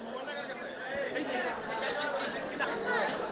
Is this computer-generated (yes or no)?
no